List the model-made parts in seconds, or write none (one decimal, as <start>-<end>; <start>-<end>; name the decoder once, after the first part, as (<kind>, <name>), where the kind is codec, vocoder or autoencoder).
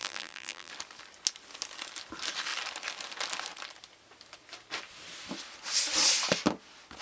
0.0-0.7 (vocoder, BigVGAN v2)